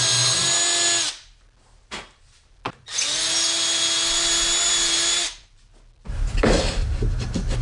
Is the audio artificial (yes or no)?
no